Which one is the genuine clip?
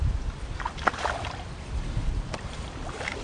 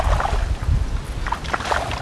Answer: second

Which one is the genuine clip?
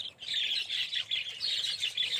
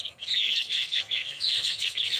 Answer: first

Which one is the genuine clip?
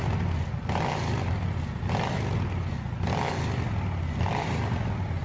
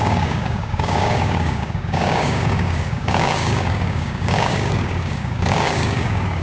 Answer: first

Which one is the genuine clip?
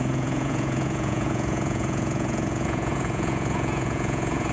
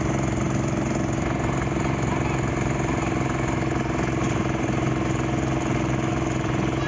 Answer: second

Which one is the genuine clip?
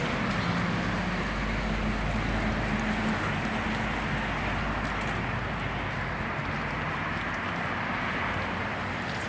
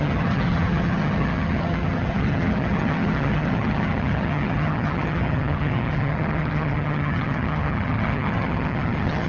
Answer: first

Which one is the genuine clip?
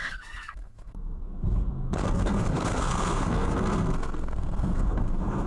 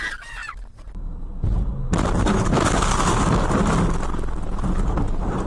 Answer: second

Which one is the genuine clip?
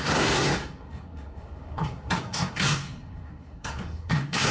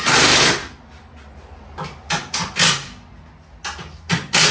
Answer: second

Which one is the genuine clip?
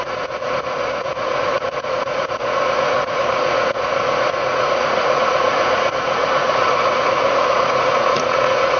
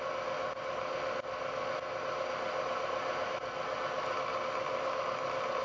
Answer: second